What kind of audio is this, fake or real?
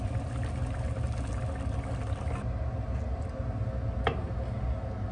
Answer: real